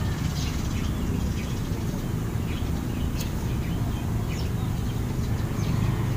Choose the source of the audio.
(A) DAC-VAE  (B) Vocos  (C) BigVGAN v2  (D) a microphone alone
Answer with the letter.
D